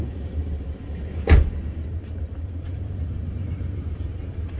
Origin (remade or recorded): remade